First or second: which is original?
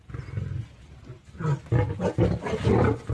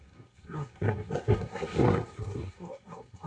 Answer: first